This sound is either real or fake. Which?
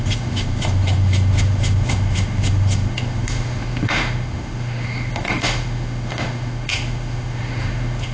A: fake